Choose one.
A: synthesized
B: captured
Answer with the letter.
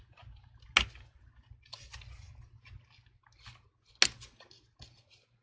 B